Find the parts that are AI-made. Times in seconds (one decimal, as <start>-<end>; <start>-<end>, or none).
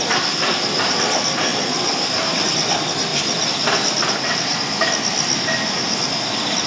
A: 0.0-1.5; 2.5-3.1; 4.1-4.5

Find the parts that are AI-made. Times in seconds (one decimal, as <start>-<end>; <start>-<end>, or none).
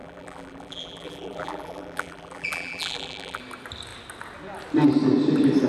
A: 0.0-3.4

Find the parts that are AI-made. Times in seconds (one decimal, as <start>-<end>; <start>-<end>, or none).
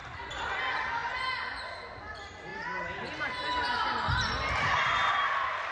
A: 0.0-0.6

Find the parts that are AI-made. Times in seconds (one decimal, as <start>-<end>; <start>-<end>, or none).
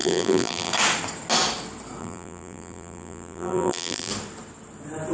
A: 0.0-0.7; 2.0-4.1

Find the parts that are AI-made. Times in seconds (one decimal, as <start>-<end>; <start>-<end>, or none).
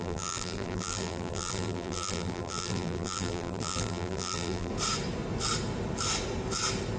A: 0.0-4.7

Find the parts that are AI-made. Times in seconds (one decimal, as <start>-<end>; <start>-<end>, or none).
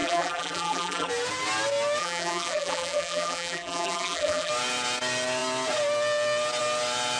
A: 0.0-1.1; 2.0-4.5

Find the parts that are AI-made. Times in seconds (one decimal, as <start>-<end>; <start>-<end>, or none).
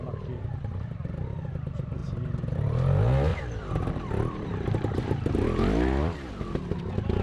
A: 2.0-2.6; 3.3-6.3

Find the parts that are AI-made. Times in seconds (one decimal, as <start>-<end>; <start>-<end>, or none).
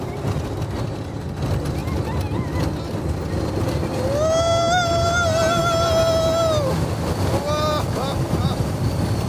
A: none